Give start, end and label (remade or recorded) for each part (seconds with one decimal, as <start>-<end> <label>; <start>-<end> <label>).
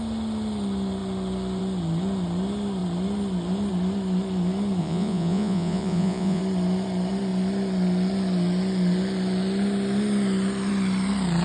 0.0-4.8 recorded; 4.8-6.4 remade; 6.4-11.4 recorded